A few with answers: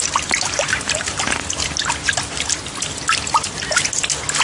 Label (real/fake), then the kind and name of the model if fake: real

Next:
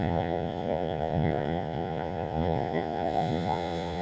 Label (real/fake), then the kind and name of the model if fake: fake, vocoder, Vocos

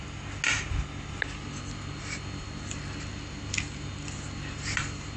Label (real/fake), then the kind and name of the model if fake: real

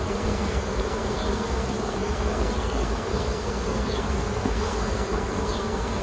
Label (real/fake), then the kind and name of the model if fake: fake, codec, SNAC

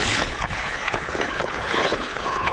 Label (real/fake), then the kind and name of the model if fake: fake, codec, HILCodec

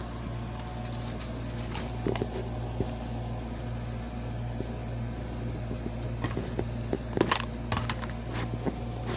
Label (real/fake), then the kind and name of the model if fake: real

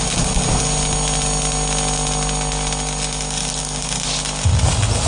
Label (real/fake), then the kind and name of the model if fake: real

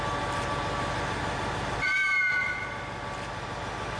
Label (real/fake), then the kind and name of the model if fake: real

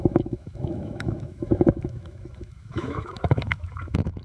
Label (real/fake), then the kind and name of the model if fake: fake, autoencoder, DAC-VAE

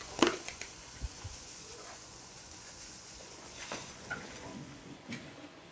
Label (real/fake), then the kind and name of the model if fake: fake, vocoder, Vocos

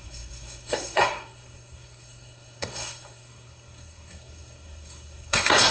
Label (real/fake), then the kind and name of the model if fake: fake, codec, SNAC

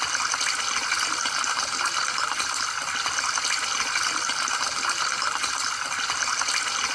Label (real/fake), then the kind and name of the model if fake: real